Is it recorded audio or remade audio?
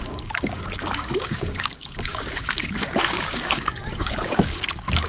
remade